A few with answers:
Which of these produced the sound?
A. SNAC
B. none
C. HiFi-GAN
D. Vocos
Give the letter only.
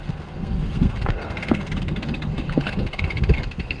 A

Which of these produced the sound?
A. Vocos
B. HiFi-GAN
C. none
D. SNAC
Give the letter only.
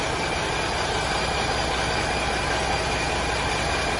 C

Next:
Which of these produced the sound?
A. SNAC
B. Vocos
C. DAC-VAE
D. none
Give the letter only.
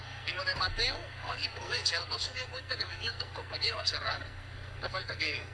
A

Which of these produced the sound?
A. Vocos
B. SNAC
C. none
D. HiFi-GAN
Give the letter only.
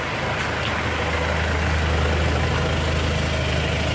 C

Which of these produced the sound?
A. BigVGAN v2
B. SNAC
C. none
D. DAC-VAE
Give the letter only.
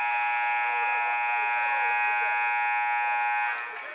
C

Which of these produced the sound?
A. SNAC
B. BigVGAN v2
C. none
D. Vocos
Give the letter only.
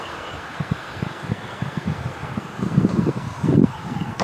A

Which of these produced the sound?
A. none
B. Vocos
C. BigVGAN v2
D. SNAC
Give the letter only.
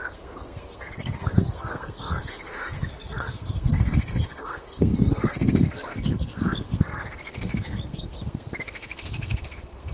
D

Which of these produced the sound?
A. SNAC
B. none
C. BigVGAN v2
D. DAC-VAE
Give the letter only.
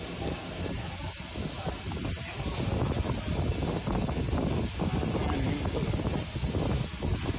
B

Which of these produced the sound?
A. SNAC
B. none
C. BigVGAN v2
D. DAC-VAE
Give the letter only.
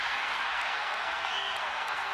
A